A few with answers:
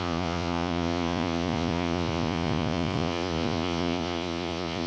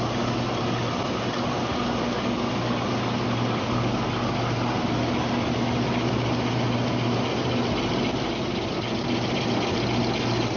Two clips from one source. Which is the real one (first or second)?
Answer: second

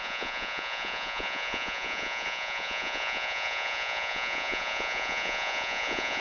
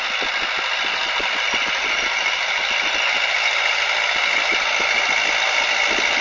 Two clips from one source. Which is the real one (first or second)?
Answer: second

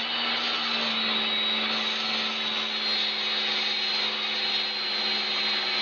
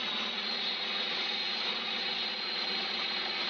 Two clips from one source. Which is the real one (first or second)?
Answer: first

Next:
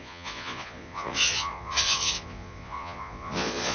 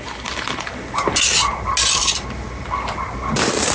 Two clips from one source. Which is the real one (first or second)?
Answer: second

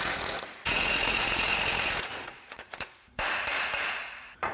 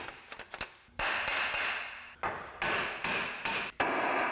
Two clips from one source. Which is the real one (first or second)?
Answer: second